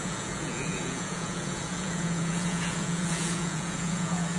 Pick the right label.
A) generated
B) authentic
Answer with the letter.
A